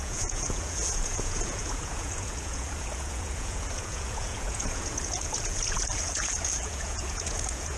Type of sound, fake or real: fake